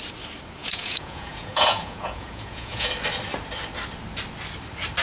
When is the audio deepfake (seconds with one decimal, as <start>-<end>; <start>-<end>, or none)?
0.6-2.9